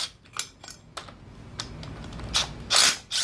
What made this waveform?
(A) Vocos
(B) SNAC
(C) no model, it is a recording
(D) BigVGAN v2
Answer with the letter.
C